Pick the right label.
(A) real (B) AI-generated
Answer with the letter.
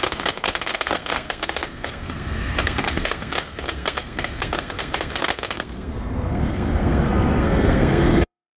B